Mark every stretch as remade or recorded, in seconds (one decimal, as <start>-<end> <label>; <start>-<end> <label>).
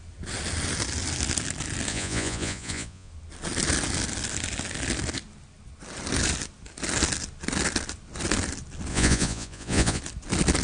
0.0-1.9 recorded; 1.9-3.1 remade; 3.1-8.9 recorded; 8.9-10.0 remade; 10.0-10.6 recorded